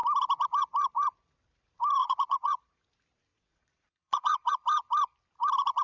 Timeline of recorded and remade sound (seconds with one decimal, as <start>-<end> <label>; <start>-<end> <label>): 0.0-2.0 recorded; 2.0-2.8 remade; 2.8-3.3 recorded; 3.3-4.5 remade; 4.5-5.8 recorded